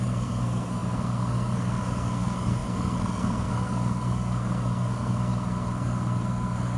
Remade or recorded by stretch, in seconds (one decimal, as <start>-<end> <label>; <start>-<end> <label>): 0.0-6.8 remade